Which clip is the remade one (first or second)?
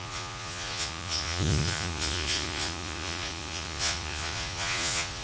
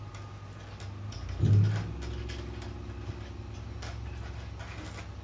first